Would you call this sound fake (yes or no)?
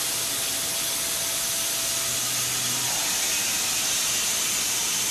no